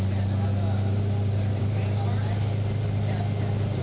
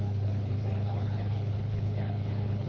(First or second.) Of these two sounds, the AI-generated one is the second